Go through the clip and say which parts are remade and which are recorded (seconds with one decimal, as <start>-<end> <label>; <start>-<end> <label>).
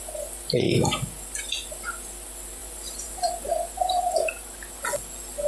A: 0.0-2.6 recorded; 2.6-3.3 remade; 3.3-3.8 recorded; 3.8-4.3 remade; 4.3-5.5 recorded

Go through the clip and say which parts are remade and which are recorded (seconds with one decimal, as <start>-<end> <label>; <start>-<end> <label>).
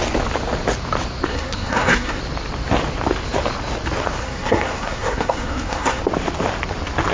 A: 0.0-1.3 recorded; 1.3-2.2 remade; 2.2-4.2 recorded; 4.2-6.0 remade; 6.0-7.1 recorded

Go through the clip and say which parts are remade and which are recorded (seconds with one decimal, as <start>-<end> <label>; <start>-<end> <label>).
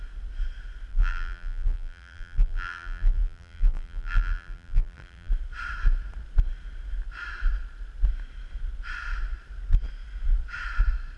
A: 0.0-0.9 recorded; 0.9-5.3 remade; 5.3-11.2 recorded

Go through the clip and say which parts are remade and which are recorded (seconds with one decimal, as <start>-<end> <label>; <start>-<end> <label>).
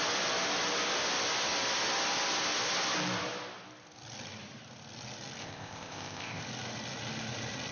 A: 0.0-5.4 recorded; 5.4-6.4 remade; 6.4-7.7 recorded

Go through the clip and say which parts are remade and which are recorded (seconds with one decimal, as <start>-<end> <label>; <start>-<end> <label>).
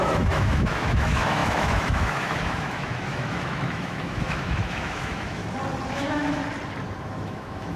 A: 0.0-5.4 remade; 5.4-5.9 recorded; 5.9-6.4 remade; 6.4-7.0 recorded; 7.0-7.8 remade